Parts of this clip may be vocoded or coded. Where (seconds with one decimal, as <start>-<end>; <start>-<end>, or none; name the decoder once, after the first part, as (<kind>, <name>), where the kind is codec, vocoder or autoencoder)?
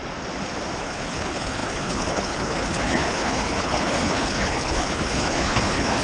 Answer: 0.8-6.0 (codec, HILCodec)